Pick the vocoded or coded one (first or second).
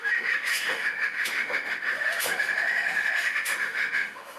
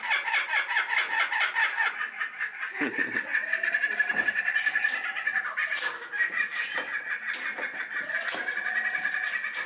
first